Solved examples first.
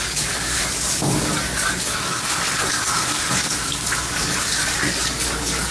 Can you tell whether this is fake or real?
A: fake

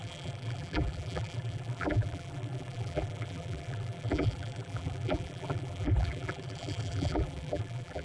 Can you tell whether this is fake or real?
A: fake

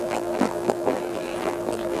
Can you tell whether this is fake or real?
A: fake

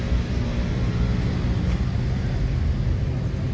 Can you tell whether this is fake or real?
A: real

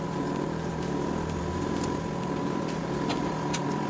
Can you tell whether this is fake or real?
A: real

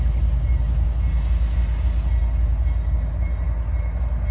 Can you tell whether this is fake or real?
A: real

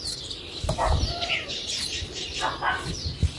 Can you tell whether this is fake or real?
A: real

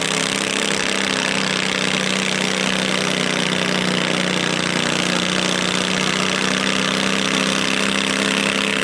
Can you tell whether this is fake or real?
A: real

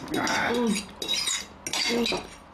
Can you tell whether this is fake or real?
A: real